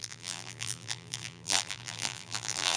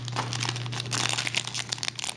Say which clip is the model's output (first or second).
first